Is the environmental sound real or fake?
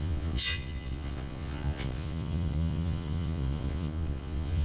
fake